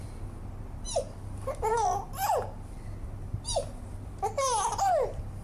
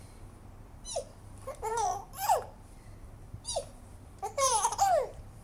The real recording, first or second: first